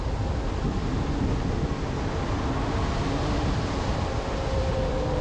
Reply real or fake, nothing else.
real